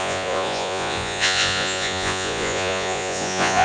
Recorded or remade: remade